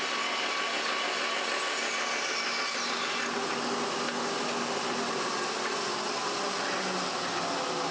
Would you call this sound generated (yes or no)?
no